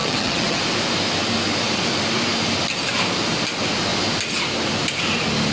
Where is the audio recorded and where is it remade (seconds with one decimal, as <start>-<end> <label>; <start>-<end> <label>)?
0.0-0.6 remade; 0.6-5.5 recorded